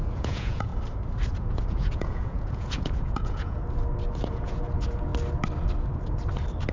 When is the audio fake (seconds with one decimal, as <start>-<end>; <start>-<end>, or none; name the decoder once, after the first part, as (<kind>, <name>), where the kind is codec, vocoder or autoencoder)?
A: 0.0-0.7 (vocoder, Vocos); 1.3-3.6; 4.3-5.1